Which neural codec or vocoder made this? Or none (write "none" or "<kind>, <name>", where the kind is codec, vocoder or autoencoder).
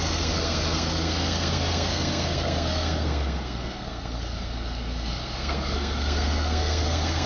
codec, SNAC